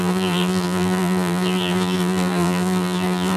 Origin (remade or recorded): remade